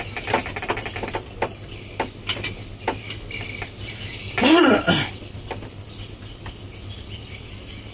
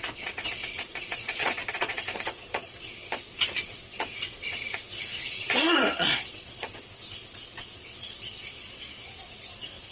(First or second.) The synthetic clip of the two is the second